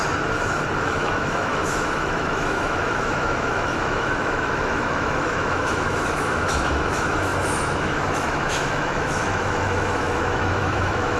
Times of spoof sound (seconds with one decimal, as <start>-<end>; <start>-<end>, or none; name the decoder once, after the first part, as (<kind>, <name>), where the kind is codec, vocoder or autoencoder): 0.8-11.2 (autoencoder, DAC-VAE)